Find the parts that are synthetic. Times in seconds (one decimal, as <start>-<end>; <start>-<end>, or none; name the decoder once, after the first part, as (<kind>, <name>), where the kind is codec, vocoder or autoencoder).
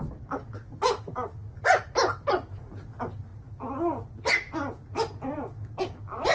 none